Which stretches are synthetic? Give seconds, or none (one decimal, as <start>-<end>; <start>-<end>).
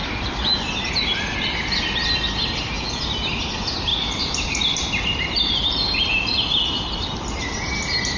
none